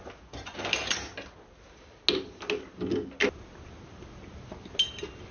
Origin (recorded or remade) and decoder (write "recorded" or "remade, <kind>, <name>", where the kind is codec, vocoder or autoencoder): recorded